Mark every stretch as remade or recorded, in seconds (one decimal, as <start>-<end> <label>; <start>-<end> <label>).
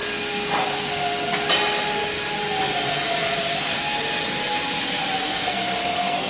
0.0-5.2 recorded; 5.2-6.3 remade